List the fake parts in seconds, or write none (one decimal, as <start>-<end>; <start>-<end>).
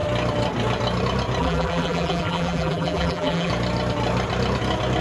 1.4-3.5